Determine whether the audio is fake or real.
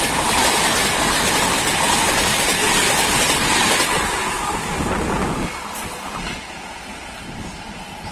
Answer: real